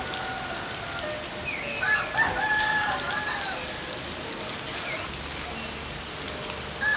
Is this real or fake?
real